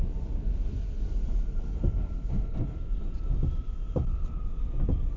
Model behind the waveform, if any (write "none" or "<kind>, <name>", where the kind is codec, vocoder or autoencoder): none